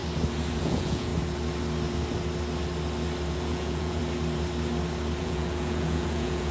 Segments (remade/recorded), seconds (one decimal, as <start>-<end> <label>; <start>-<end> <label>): 0.0-0.6 recorded; 0.6-1.1 remade; 1.1-3.3 recorded; 3.3-4.0 remade; 4.0-5.2 recorded; 5.2-6.5 remade